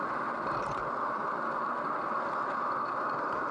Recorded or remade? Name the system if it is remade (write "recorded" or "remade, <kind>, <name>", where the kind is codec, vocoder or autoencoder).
recorded